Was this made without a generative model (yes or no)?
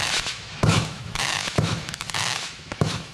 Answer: no